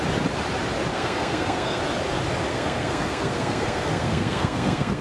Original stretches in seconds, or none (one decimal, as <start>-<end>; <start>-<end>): 0.0-0.9; 1.8-2.5